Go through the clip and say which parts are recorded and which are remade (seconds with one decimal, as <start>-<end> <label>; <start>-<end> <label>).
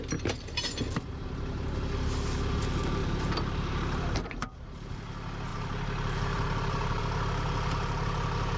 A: 0.0-3.0 recorded; 3.0-4.0 remade; 4.0-5.5 recorded; 5.5-7.0 remade; 7.0-8.6 recorded